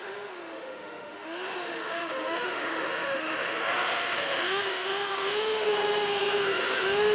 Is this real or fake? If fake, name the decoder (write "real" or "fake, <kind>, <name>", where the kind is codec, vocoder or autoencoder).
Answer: fake, autoencoder, DAC-VAE